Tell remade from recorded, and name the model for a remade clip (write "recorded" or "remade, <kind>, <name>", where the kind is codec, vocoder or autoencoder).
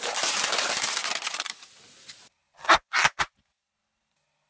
recorded